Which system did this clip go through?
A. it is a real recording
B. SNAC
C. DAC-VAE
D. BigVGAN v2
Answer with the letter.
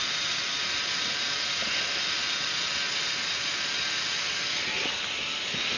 A